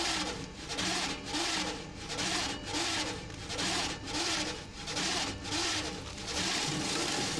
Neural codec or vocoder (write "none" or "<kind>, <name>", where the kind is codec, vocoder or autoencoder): none